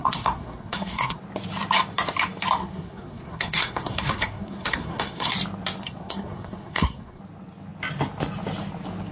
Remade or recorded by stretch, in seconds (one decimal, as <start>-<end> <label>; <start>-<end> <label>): 0.0-1.2 remade; 1.2-2.6 recorded; 2.6-5.3 remade; 5.3-5.8 recorded; 5.8-7.2 remade; 7.2-9.1 recorded